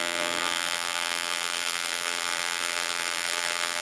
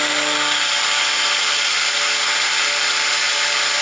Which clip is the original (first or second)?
second